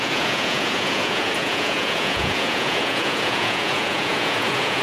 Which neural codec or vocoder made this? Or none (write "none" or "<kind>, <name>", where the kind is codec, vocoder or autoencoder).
vocoder, Vocos